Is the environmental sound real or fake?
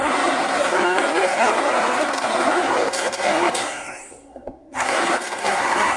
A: fake